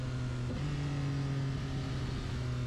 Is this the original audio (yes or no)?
yes